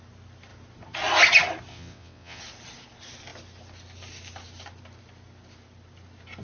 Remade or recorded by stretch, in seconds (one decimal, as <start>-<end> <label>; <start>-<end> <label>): 0.0-1.7 recorded; 1.7-2.4 remade; 2.4-6.4 recorded

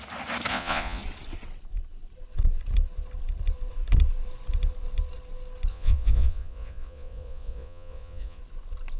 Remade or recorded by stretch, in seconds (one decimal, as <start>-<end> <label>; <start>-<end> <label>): 0.0-0.5 recorded; 0.5-1.0 remade; 1.0-5.7 recorded; 5.7-8.4 remade; 8.4-9.0 recorded